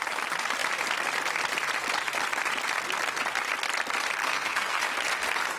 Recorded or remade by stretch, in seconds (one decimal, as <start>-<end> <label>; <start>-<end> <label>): 0.0-4.2 recorded; 4.2-4.8 remade; 4.8-5.6 recorded